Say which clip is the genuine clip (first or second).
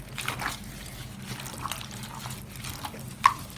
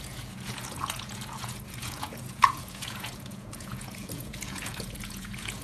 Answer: first